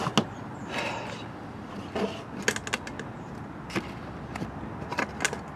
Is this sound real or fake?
real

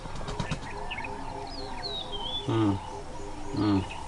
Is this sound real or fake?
real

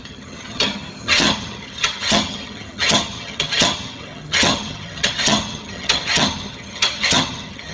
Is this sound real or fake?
fake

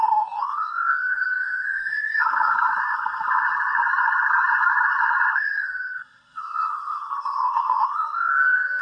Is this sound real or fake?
fake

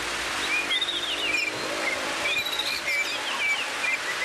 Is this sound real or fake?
real